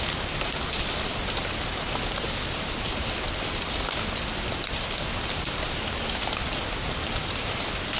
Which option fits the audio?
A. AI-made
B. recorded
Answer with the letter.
B